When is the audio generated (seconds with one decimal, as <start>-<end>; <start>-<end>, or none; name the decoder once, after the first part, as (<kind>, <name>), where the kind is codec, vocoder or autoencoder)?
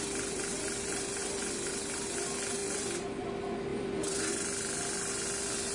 3.7-4.3 (vocoder, BigVGAN v2)